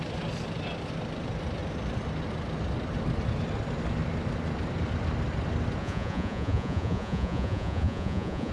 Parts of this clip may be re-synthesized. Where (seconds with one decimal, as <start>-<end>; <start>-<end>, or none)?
5.8-8.5

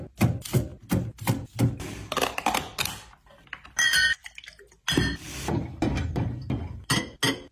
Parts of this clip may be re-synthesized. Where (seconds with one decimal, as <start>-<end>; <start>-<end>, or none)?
none

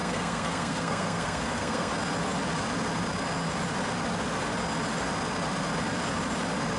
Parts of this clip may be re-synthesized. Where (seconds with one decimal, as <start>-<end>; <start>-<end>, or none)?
0.0-1.9

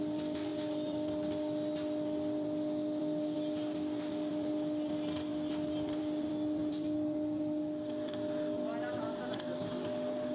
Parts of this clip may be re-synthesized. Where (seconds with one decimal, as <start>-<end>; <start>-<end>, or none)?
none